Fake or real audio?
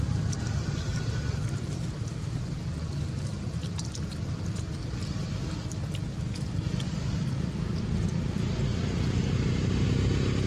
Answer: real